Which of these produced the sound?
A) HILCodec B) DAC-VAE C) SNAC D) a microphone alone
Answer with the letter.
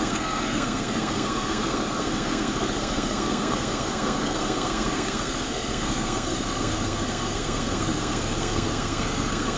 C